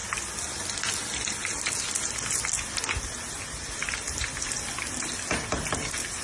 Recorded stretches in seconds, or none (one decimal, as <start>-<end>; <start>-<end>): 0.0-6.2